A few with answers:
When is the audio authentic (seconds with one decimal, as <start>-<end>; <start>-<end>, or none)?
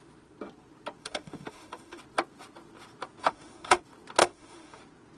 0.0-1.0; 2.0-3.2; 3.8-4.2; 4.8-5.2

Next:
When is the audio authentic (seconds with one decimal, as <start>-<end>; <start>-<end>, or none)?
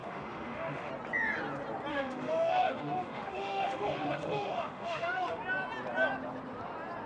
0.9-1.9; 5.4-7.1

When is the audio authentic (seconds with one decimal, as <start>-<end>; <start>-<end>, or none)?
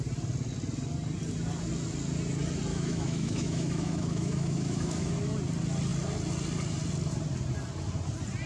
0.0-2.7; 5.1-8.5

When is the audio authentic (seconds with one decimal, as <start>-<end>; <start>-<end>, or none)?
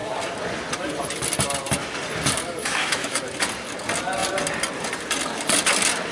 0.0-2.6; 3.2-6.1